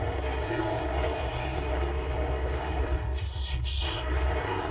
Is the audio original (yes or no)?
no